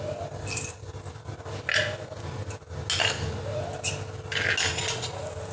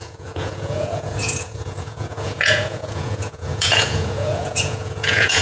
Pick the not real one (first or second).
second